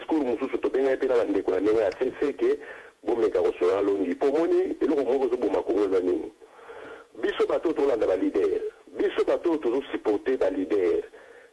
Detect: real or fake fake